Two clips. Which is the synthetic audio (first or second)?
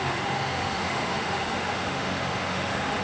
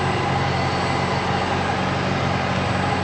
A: first